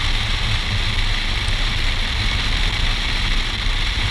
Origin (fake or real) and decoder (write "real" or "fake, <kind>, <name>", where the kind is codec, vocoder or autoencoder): real